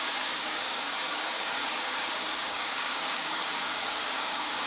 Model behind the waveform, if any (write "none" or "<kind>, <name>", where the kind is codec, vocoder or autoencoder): codec, DAC